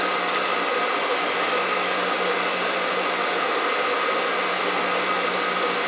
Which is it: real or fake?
real